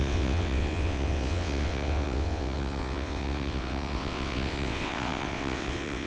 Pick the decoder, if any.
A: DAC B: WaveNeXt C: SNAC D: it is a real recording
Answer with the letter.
B